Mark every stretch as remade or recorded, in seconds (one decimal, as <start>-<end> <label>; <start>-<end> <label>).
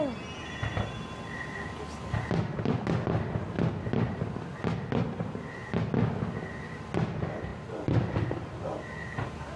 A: 0.0-9.6 recorded